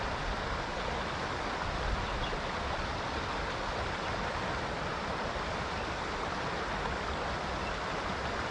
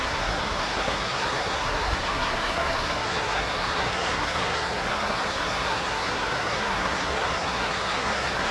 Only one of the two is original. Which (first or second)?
first